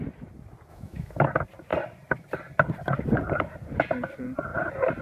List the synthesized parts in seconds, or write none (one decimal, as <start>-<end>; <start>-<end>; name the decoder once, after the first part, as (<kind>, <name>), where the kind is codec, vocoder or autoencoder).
0.7-1.2 (autoencoder, DAC-VAE)